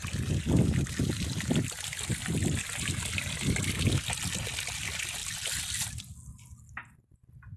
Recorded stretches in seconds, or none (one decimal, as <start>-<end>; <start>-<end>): 0.0-7.6